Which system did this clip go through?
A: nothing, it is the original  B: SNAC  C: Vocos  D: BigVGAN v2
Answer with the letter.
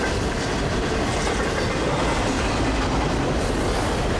A